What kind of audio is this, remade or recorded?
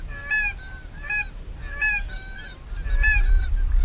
recorded